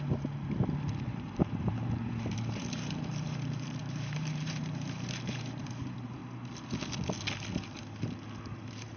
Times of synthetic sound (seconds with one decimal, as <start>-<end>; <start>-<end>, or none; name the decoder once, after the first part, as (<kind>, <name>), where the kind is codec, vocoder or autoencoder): 0.0-6.2 (vocoder, BigVGAN v2); 8.6-9.0